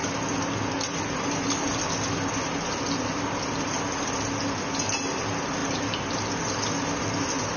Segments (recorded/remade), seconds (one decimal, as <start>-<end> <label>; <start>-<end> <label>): 0.0-7.6 recorded